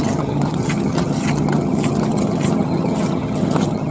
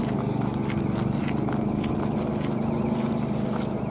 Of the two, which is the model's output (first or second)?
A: first